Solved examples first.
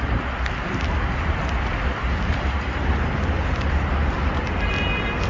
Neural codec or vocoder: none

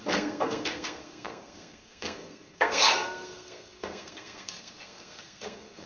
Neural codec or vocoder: codec, SNAC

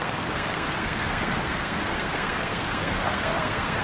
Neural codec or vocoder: codec, SNAC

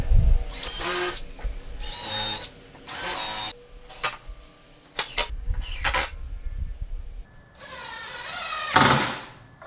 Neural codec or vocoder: none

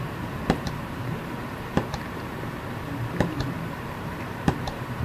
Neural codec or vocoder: vocoder, BigVGAN v2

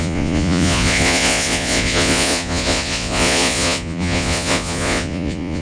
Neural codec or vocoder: vocoder, Vocos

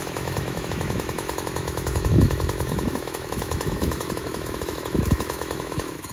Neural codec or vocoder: autoencoder, DAC-VAE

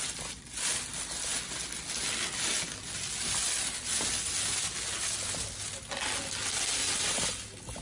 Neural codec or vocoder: none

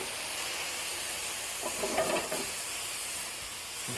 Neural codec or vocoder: none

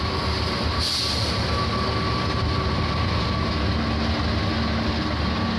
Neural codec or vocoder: none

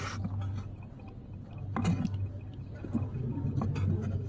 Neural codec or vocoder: none